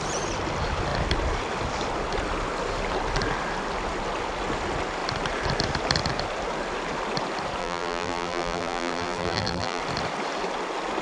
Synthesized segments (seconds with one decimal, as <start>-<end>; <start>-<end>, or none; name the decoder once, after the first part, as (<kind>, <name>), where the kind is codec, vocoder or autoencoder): 7.6-9.8 (vocoder, BigVGAN v2)